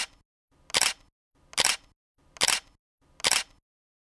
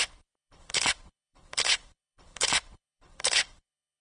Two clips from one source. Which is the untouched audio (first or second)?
first